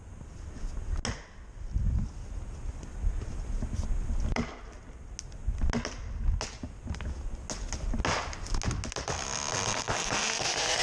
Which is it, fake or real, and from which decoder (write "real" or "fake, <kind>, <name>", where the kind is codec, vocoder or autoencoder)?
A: real